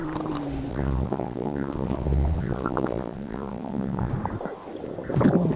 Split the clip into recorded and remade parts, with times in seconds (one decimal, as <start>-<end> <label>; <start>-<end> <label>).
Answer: 0.0-0.7 recorded; 0.7-4.1 remade; 4.1-5.6 recorded